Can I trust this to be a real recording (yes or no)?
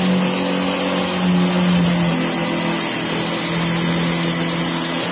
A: yes